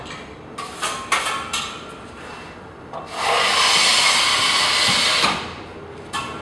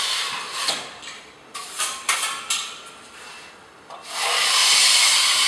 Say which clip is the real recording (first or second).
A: first